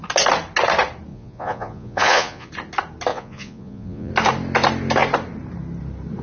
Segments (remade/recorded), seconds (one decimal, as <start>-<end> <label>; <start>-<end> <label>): 0.0-1.1 recorded; 1.1-2.5 remade; 2.5-3.1 recorded; 3.1-4.1 remade; 4.1-6.2 recorded